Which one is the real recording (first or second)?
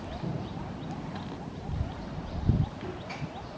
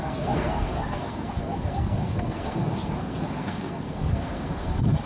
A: first